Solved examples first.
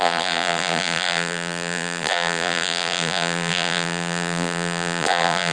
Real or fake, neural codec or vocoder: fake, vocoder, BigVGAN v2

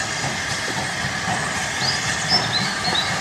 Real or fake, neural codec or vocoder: real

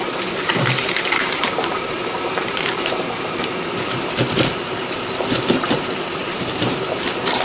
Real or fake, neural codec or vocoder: fake, vocoder, BigVGAN v2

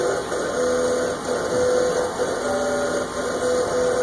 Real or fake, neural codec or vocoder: real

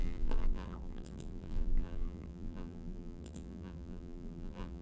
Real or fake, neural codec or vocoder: fake, vocoder, BigVGAN v2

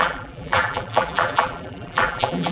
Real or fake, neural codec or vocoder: fake, vocoder, BigVGAN v2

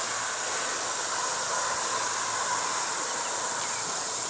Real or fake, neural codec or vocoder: real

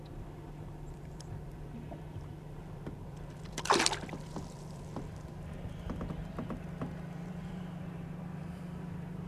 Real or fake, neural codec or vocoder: fake, vocoder, BigVGAN v2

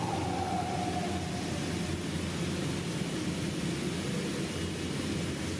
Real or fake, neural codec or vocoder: real